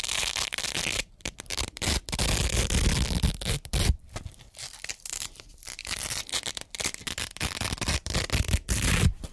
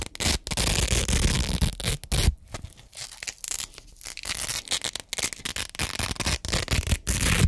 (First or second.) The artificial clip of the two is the first